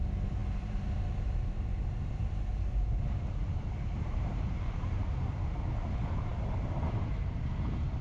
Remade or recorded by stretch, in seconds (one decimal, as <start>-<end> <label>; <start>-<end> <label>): 0.0-0.4 recorded; 0.4-4.9 remade; 4.9-8.0 recorded